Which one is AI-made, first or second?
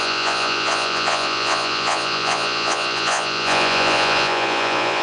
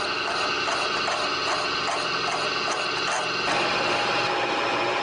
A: first